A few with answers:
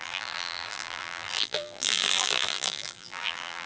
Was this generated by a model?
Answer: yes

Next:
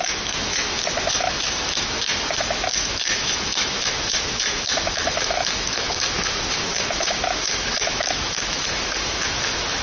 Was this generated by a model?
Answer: yes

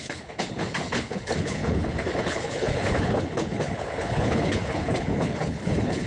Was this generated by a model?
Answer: yes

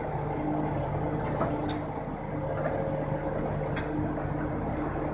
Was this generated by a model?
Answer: no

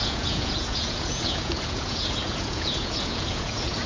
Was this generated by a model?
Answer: yes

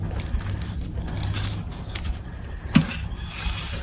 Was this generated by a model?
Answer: no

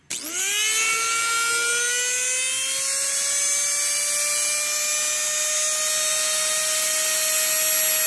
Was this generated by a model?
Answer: no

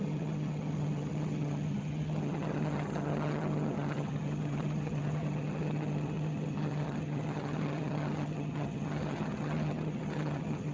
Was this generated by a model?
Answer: yes